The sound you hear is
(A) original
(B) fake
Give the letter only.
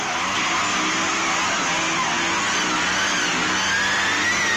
A